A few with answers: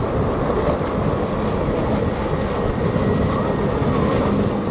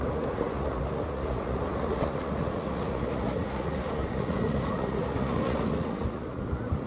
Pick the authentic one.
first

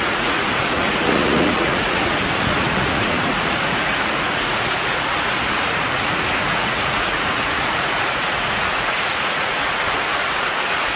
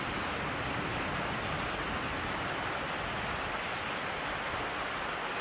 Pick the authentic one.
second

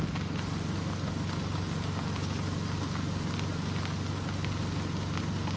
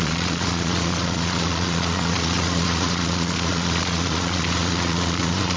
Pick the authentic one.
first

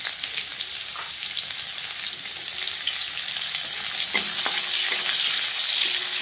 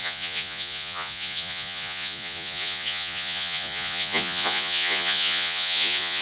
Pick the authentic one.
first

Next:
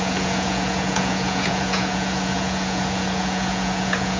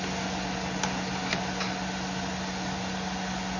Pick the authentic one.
second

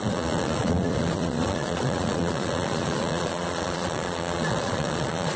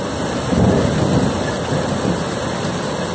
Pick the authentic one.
second